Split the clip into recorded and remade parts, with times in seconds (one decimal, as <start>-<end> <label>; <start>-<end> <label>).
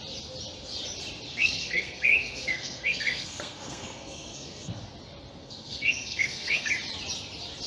0.0-1.3 recorded; 1.3-4.8 remade; 4.8-5.4 recorded; 5.4-6.7 remade; 6.7-7.7 recorded